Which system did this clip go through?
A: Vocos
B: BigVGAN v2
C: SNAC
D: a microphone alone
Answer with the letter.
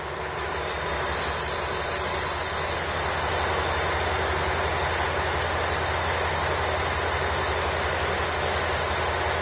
D